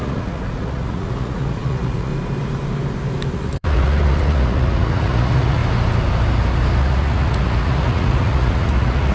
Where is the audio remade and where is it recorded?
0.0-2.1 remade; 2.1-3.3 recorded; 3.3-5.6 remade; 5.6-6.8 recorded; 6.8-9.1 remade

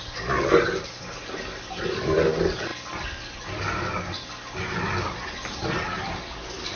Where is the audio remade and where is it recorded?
0.0-6.8 recorded

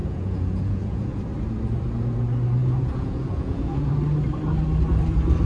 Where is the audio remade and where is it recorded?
0.0-1.2 remade; 1.2-2.6 recorded; 2.6-3.9 remade; 3.9-5.5 recorded

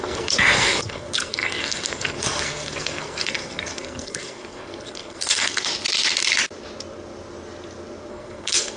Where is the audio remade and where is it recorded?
0.0-5.7 remade; 5.7-8.1 recorded; 8.1-8.8 remade

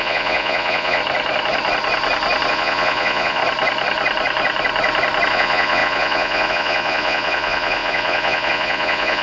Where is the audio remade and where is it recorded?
0.0-1.0 remade; 1.0-2.5 recorded; 2.5-3.4 remade; 3.4-5.3 recorded; 5.3-9.2 remade

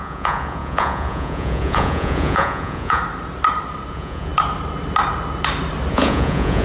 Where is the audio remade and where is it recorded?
0.0-3.0 remade; 3.0-3.9 recorded; 3.9-4.3 remade; 4.3-5.9 recorded; 5.9-6.6 remade